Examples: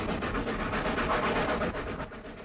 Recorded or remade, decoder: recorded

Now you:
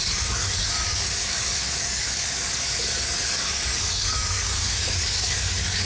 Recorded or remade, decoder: remade, codec, DAC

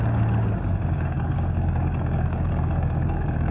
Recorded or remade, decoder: remade, codec, DAC